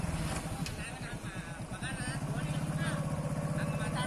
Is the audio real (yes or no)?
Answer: yes